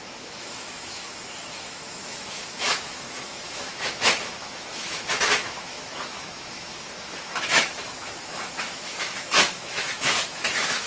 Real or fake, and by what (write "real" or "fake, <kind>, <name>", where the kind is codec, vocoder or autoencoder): fake, autoencoder, DAC-VAE